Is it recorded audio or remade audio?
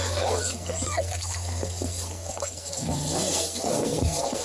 remade